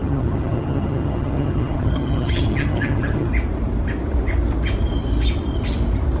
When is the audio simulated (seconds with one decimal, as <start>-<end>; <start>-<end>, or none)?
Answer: 0.0-3.3